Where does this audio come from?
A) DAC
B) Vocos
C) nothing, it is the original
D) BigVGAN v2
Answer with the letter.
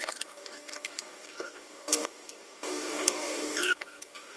A